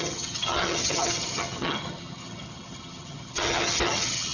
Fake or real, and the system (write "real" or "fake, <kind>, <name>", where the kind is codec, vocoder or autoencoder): fake, vocoder, HiFi-GAN